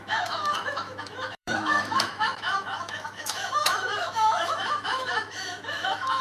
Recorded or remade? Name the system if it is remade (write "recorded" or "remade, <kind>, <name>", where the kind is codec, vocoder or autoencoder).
remade, autoencoder, DAC-VAE